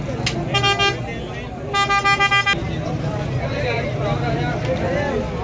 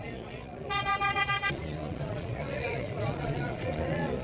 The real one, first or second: first